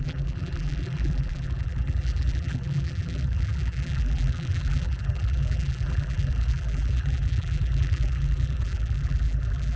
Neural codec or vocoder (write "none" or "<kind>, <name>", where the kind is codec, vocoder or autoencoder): vocoder, BigVGAN v2